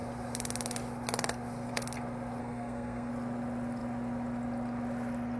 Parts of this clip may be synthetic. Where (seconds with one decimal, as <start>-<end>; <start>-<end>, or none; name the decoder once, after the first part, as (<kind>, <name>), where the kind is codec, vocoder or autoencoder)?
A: 2.4-3.1 (codec, SNAC)

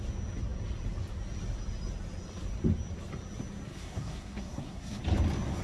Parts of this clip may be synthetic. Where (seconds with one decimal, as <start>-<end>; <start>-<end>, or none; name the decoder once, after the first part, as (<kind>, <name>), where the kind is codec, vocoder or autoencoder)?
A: 3.7-5.0 (codec, SNAC)

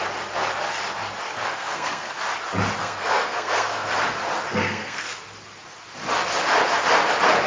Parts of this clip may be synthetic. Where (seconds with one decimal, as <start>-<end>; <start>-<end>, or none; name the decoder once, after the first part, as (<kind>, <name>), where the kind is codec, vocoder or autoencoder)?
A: 1.3-2.2 (codec, SNAC); 2.8-3.9; 4.5-5.1

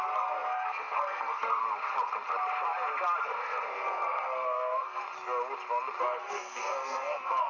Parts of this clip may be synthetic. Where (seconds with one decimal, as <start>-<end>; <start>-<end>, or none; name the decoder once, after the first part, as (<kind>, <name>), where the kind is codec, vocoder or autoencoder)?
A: 0.0-1.6 (codec, SNAC); 3.2-5.0; 6.0-7.5

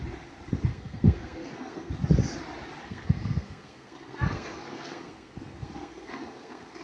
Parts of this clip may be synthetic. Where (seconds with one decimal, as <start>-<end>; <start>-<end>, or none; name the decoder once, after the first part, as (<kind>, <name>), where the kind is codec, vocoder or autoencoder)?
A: 0.7-1.9 (codec, SNAC); 2.8-6.8

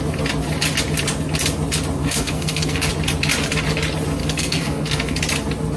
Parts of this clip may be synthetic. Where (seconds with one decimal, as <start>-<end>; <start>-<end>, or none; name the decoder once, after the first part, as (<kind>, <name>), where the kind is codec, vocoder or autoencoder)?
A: 2.0-2.9 (codec, SNAC); 4.2-5.2

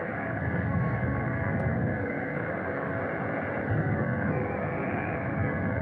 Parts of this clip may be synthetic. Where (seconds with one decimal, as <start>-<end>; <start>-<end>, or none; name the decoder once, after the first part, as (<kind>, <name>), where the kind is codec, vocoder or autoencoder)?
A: 0.0-3.0 (codec, SNAC); 3.7-5.8